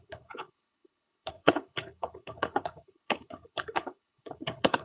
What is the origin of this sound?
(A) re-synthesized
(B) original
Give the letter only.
A